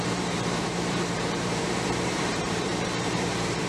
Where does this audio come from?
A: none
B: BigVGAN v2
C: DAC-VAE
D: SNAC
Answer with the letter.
B